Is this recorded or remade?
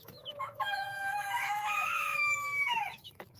remade